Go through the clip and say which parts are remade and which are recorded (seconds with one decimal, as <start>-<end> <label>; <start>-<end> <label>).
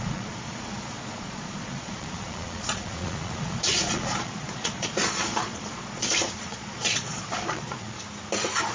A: 0.0-8.0 remade; 8.0-8.7 recorded